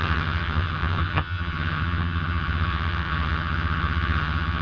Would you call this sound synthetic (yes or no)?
yes